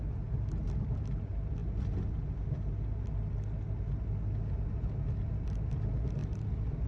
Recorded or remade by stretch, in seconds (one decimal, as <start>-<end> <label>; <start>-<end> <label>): 0.0-6.9 recorded